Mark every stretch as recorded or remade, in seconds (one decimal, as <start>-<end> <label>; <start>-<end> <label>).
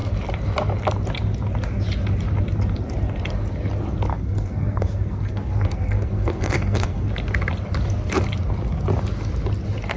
0.0-4.1 recorded; 4.1-7.1 remade; 7.1-10.0 recorded